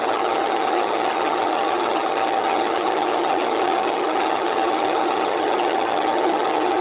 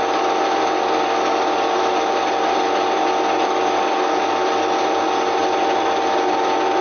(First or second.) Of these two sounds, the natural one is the second